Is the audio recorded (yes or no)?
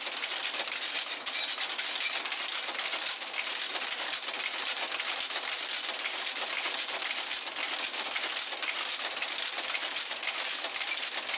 yes